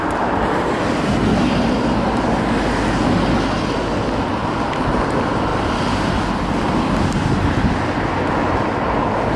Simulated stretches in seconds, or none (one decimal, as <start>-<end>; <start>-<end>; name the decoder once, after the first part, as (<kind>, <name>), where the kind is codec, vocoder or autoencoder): none